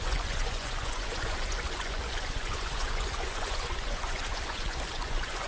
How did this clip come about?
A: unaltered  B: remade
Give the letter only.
B